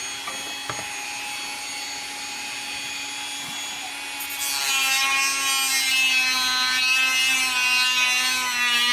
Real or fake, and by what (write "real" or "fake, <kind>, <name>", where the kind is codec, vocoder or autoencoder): real